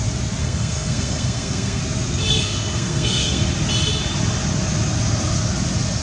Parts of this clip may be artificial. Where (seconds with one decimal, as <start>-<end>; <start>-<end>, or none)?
0.4-1.8; 2.3-3.5